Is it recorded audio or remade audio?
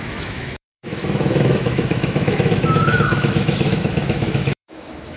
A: remade